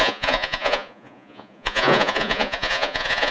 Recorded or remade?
remade